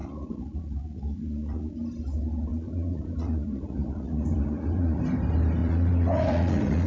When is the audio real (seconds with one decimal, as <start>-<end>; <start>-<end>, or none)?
1.7-2.5; 5.0-5.6